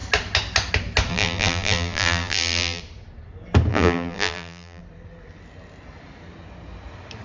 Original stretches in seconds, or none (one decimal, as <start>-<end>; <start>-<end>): 0.0-1.1; 2.8-3.7; 4.8-7.2